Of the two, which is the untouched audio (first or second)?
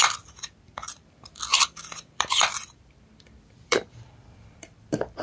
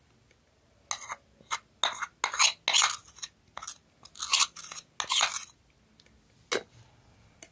second